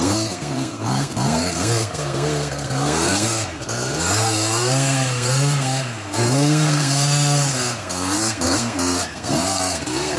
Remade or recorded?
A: remade